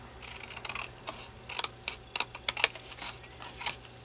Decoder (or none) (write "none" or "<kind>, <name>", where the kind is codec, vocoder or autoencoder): none